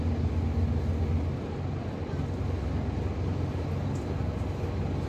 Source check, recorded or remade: recorded